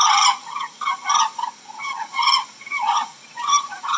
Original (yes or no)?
no